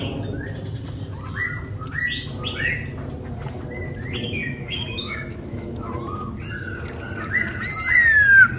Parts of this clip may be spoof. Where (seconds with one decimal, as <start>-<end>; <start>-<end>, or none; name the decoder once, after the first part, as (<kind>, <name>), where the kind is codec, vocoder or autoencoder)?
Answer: 4.4-5.9 (autoencoder, DAC-VAE)